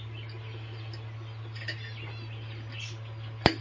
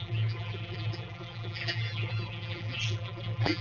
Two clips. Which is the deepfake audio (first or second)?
second